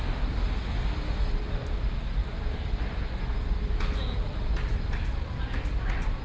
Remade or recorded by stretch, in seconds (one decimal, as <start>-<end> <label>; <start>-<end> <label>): 0.0-6.2 recorded

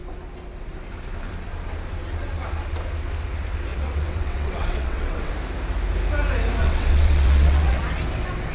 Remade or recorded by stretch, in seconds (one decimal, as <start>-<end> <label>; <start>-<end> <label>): 0.0-3.7 recorded; 3.7-5.3 remade; 5.3-6.6 recorded; 6.6-7.8 remade; 7.8-8.5 recorded

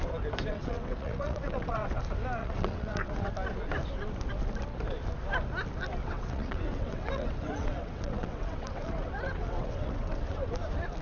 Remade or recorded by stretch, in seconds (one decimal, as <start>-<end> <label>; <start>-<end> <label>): 0.0-0.5 recorded; 0.5-2.0 remade; 2.0-2.4 recorded; 2.4-3.3 remade; 3.3-6.0 recorded; 6.0-10.5 remade; 10.5-11.0 recorded

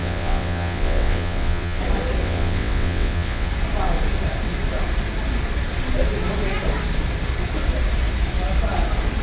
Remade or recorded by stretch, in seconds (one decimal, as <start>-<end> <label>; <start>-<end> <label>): 0.0-1.8 remade; 1.8-2.2 recorded; 2.2-3.5 remade; 3.5-9.2 recorded

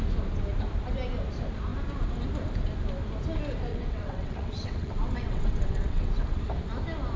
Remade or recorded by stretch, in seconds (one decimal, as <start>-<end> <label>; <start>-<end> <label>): 0.0-3.7 recorded; 3.7-6.4 remade; 6.4-7.2 recorded